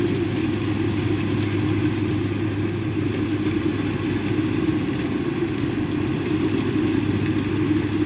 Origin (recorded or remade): recorded